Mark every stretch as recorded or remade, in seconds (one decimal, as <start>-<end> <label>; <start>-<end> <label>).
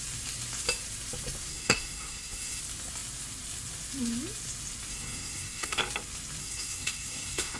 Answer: 0.0-1.5 recorded; 1.5-2.6 remade; 2.6-4.9 recorded; 4.9-5.8 remade; 5.8-6.4 recorded; 6.4-7.6 remade